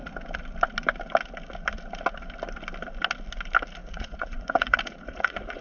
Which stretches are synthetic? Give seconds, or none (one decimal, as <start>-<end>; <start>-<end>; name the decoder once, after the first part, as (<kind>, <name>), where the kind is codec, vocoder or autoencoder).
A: 3.8-5.6 (vocoder, Vocos)

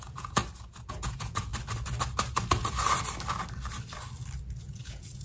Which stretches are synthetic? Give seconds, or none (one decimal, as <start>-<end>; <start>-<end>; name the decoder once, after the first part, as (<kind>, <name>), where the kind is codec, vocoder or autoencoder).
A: 0.0-0.4 (vocoder, Vocos); 0.9-1.5; 4.6-5.2

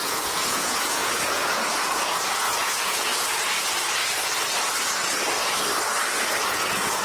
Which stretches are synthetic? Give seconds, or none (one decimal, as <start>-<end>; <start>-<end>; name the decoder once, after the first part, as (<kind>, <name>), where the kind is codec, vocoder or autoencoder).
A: 0.0-3.1 (vocoder, Vocos); 6.5-7.0

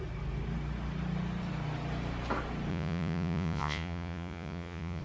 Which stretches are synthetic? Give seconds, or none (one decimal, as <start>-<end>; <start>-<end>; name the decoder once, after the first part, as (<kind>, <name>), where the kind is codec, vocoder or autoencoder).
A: 2.7-5.0 (vocoder, Vocos)

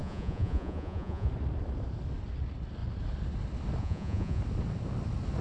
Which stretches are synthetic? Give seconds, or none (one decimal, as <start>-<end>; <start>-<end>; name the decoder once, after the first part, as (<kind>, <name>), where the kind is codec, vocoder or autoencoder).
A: 0.0-1.3 (vocoder, Vocos); 3.8-4.4